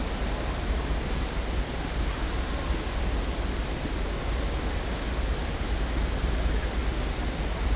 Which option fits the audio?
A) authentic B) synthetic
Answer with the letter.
A